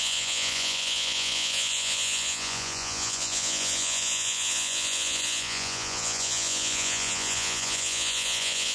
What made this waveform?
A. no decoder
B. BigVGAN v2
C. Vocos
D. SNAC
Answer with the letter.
C